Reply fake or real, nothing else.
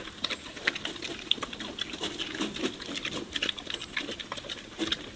real